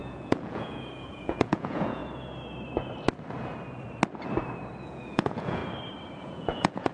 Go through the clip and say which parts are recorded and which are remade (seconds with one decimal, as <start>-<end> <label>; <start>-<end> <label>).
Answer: 0.0-2.0 remade; 2.0-4.8 recorded; 4.8-5.6 remade; 5.6-6.2 recorded; 6.2-6.9 remade